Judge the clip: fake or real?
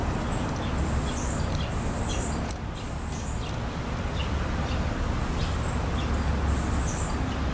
real